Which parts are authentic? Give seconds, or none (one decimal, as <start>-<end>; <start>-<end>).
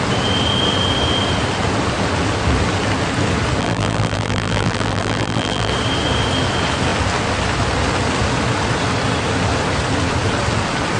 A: 0.0-3.6; 5.7-11.0